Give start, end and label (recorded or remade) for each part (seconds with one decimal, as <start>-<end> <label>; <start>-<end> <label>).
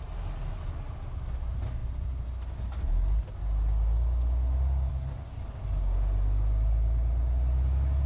0.0-8.1 recorded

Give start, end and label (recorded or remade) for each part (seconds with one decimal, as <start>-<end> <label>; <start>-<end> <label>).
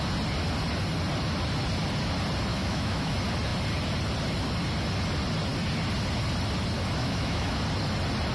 0.0-2.5 recorded; 2.5-3.1 remade; 3.1-7.0 recorded; 7.0-7.6 remade; 7.6-8.3 recorded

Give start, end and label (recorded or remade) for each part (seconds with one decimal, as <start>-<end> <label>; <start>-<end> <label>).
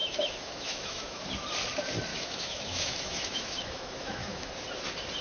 0.0-1.2 remade; 1.2-2.1 recorded; 2.1-4.5 remade; 4.5-5.2 recorded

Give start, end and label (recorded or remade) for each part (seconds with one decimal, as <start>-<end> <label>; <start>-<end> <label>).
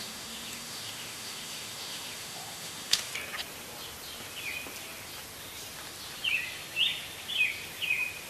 0.0-3.1 remade; 3.1-8.3 recorded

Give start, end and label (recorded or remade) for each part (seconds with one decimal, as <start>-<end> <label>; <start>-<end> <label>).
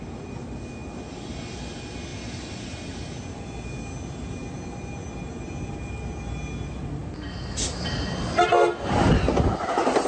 0.0-10.1 recorded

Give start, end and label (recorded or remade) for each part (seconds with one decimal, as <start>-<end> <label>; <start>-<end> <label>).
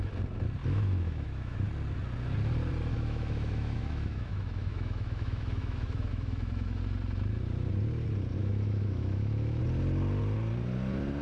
0.0-0.6 recorded; 0.6-1.6 remade; 1.6-2.9 recorded; 2.9-6.8 remade; 6.8-8.4 recorded; 8.4-9.6 remade; 9.6-11.2 recorded